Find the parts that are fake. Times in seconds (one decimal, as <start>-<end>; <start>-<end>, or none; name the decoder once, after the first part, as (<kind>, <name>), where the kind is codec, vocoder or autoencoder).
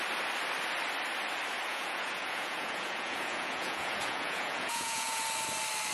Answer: 1.7-5.2 (vocoder, Vocos)